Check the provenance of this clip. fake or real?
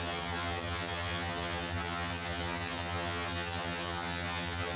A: fake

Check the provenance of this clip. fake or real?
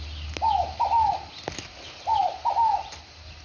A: real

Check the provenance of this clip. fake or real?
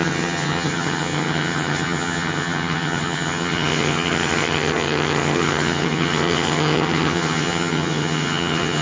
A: fake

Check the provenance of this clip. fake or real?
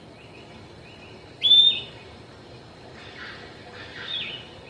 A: real